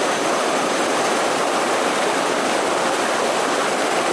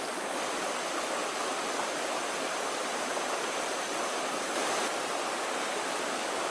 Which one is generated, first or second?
first